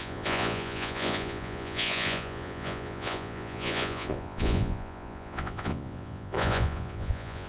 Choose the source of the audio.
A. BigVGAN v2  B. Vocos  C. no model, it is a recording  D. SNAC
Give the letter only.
B